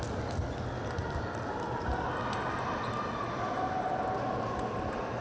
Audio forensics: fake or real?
real